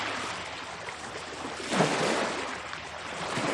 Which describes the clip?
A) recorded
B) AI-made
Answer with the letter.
A